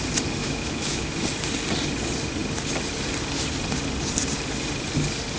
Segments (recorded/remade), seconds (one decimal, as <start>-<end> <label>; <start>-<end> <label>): 0.0-0.4 recorded; 0.4-1.1 remade; 1.1-5.4 recorded